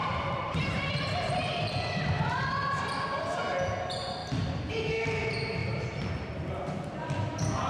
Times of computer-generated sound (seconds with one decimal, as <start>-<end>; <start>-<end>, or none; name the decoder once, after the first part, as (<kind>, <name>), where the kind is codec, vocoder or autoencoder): 0.0-2.5 (vocoder, BigVGAN v2); 4.2-4.7; 5.6-6.3